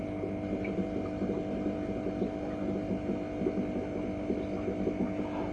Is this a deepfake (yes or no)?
no